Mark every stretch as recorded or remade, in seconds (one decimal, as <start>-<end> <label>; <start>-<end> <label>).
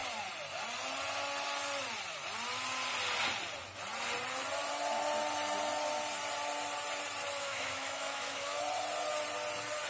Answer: 0.0-7.4 recorded; 7.4-8.6 remade; 8.6-9.9 recorded